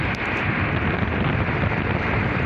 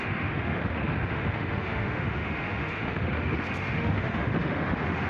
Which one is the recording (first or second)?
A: first